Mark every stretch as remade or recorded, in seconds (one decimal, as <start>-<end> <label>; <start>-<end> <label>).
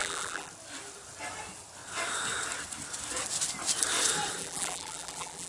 0.0-0.5 remade; 0.5-4.4 recorded; 4.4-5.5 remade